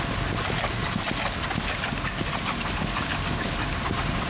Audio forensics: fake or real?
real